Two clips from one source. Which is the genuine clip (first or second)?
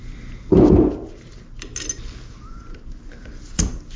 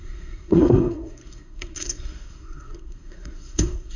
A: first